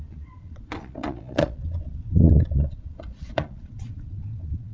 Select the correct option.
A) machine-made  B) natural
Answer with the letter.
A